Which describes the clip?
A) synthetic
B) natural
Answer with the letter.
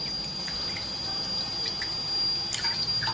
B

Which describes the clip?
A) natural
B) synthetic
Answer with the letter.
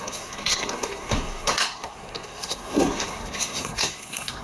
B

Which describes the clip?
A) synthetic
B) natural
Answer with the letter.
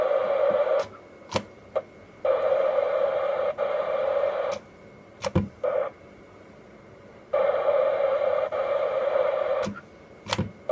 B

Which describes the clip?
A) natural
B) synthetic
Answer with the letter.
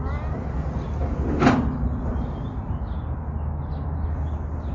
A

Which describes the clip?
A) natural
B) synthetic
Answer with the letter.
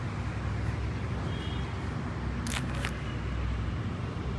A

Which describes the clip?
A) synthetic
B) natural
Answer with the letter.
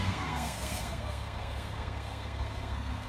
A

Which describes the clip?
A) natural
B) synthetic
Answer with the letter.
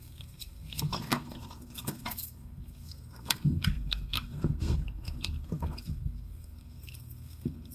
B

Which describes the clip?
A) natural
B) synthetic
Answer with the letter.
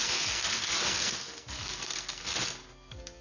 B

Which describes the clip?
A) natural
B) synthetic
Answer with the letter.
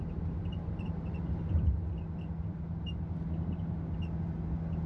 A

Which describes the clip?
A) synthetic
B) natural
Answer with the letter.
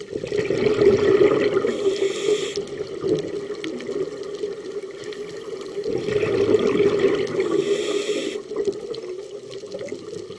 B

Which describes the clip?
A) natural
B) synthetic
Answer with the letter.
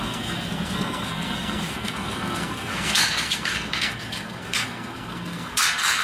B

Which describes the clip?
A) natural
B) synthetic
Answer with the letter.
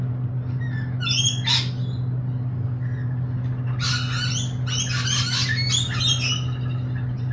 A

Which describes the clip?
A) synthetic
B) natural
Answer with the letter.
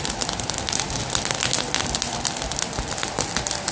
B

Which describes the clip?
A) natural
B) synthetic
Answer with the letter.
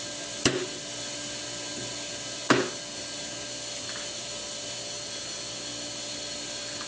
A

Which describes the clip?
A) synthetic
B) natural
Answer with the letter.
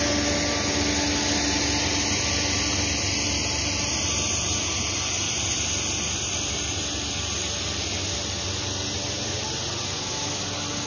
B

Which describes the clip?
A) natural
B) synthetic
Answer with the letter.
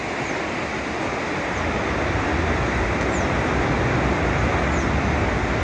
A